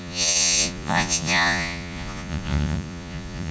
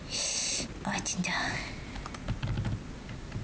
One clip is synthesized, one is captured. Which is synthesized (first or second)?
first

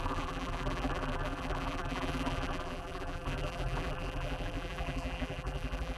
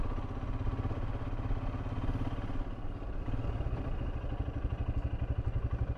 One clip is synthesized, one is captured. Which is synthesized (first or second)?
first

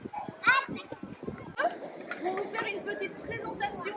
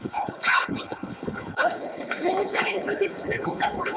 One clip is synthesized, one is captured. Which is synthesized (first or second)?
second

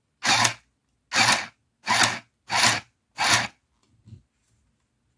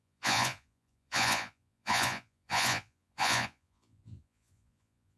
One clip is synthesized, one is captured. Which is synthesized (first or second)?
second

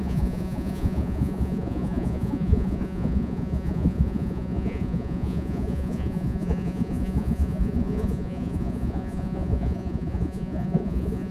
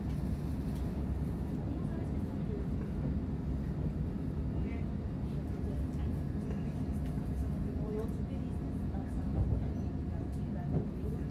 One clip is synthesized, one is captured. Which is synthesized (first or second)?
first